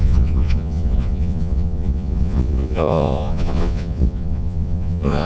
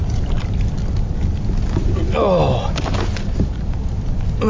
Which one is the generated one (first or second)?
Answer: first